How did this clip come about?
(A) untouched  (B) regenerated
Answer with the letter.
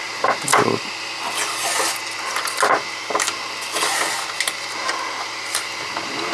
A